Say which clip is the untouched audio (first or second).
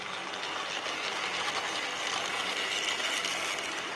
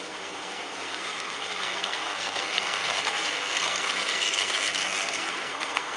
first